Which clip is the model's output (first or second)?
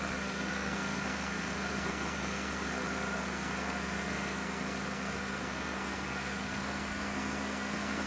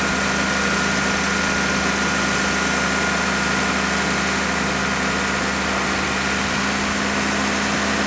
first